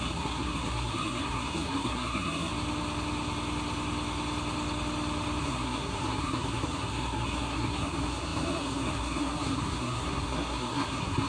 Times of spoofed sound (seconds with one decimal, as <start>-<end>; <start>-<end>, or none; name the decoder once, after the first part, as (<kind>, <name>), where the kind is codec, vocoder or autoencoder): 0.0-2.5 (codec, SNAC); 5.4-11.3